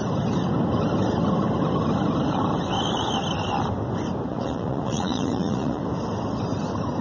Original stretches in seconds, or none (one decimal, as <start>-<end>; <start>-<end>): 0.0-4.3; 5.8-7.0

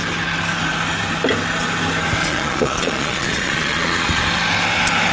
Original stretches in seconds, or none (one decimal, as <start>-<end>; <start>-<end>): 0.0-2.2; 4.2-5.1

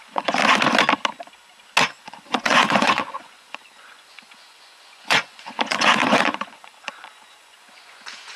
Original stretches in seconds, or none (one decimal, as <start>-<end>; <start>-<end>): 0.4-2.0

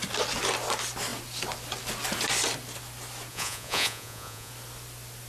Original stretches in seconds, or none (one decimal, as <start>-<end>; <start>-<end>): 0.0-3.3; 4.5-5.3